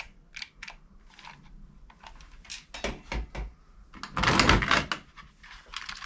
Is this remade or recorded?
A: recorded